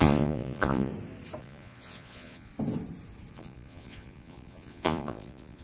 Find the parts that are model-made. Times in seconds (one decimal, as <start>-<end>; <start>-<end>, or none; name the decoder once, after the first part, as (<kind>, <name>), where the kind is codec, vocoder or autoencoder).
0.0-0.9 (vocoder, Vocos); 1.4-2.5; 3.3-5.6